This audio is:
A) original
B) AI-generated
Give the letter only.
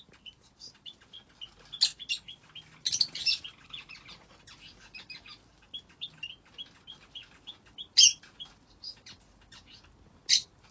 A